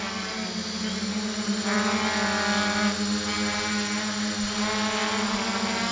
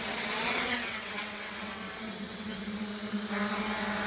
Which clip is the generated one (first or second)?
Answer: second